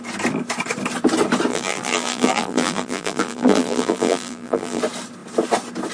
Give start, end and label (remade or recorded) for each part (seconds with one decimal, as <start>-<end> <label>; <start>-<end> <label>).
0.0-1.5 recorded; 1.5-4.8 remade; 4.8-5.9 recorded